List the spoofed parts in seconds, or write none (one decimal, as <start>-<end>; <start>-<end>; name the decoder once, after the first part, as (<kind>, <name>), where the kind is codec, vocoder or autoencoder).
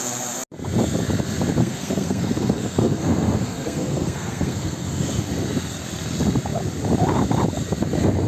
1.6-5.1 (codec, SNAC)